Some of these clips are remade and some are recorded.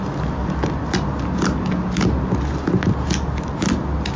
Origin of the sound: recorded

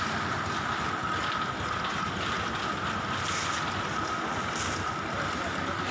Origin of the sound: recorded